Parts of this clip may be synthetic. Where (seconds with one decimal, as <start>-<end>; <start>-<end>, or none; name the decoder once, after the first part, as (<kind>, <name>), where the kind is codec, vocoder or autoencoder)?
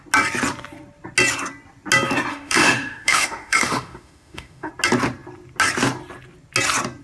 2.3-4.7 (autoencoder, DAC-VAE)